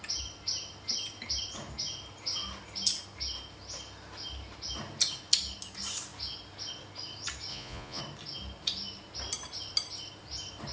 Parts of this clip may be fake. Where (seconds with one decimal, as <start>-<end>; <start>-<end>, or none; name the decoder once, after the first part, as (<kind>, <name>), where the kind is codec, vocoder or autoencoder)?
7.5-8.0 (vocoder, Vocos)